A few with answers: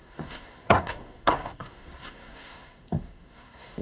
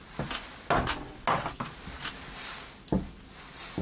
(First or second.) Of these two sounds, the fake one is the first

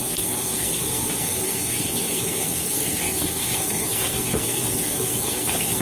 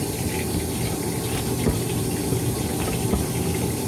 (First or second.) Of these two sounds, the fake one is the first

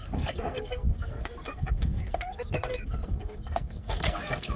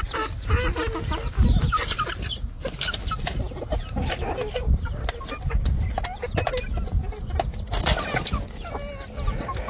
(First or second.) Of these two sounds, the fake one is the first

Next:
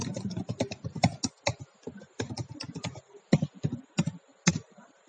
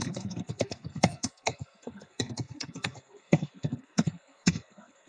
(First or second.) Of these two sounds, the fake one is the second